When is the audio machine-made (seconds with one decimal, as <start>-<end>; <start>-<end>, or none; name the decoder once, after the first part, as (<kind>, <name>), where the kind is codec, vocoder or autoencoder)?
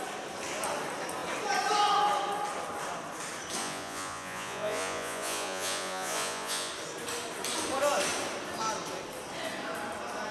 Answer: 3.6-6.7 (vocoder, Vocos)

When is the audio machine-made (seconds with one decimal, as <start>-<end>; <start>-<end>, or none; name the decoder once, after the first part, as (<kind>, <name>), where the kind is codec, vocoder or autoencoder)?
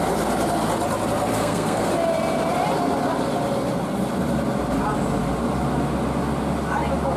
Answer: 1.3-1.9 (codec, SNAC)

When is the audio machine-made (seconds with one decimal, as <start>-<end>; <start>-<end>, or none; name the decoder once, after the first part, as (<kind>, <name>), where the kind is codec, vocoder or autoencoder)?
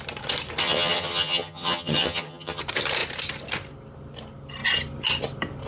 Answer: 0.6-2.6 (vocoder, HiFi-GAN)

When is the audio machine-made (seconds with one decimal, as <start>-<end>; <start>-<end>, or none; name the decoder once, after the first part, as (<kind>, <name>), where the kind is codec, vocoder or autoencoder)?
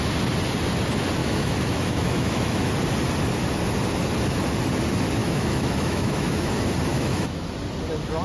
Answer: 1.2-2.7 (autoencoder, DAC-VAE); 5.2-6.5; 6.9-7.5